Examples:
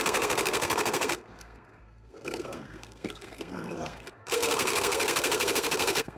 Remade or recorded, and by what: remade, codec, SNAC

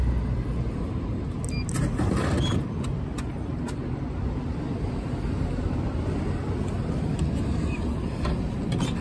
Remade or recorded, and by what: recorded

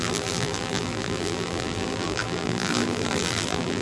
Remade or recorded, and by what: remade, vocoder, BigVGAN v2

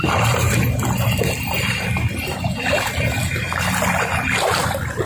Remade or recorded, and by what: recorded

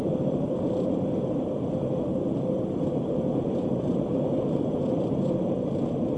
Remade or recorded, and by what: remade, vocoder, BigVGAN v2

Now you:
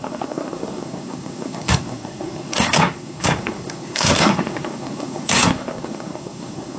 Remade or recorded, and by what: remade, codec, SNAC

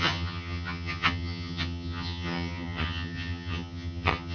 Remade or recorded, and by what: remade, vocoder, HiFi-GAN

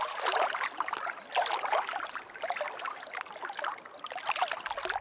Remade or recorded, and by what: recorded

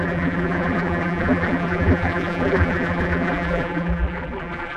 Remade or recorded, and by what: remade, vocoder, BigVGAN v2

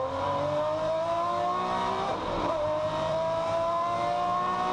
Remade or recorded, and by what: remade, vocoder, BigVGAN v2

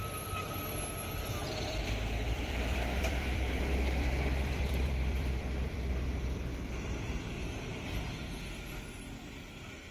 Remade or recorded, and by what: remade, vocoder, BigVGAN v2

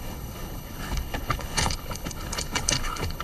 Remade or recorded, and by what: remade, codec, HILCodec